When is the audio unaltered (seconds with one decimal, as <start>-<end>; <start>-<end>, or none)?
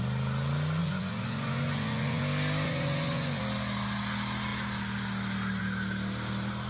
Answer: 0.0-0.8; 2.2-2.7; 3.4-6.7